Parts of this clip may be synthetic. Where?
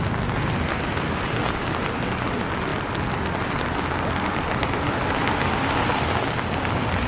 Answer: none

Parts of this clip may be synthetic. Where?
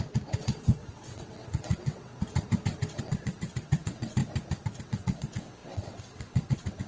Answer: 0.0-2.1 (vocoder, WaveNeXt); 3.0-4.2; 4.8-6.9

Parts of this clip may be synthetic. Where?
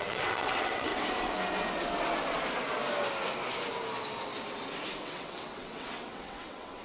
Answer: 0.0-0.9 (vocoder, WaveNeXt); 5.0-6.8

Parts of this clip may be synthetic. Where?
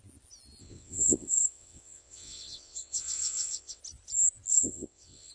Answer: 0.6-3.8 (vocoder, WaveNeXt); 4.5-5.3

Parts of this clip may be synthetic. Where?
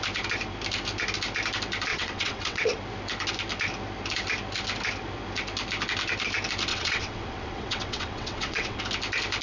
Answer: 1.9-2.8 (vocoder, WaveNeXt); 6.7-8.8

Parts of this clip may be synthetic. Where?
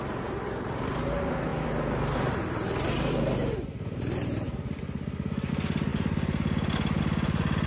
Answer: none